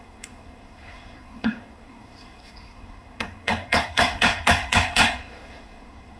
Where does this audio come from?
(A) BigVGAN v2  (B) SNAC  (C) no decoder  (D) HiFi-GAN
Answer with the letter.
B